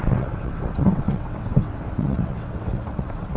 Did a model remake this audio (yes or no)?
yes